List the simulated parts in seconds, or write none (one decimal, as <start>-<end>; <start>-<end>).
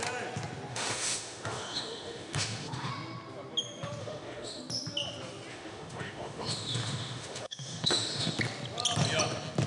0.7-2.9; 4.0-4.6; 5.5-8.4